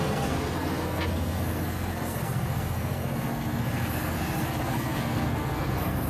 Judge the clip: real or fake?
fake